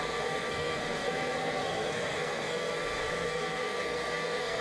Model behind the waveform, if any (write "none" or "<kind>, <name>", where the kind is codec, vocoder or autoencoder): codec, SNAC